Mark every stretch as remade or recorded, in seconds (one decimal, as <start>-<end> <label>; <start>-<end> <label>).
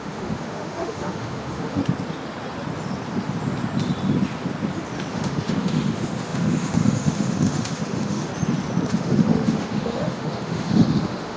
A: 0.0-1.8 remade; 1.8-5.1 recorded; 5.1-8.3 remade; 8.3-8.9 recorded; 8.9-11.4 remade